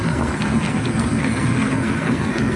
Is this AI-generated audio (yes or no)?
yes